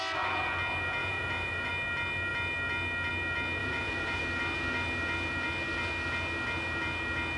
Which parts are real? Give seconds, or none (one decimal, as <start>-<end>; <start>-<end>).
0.0-1.0; 1.7-3.6; 4.2-7.4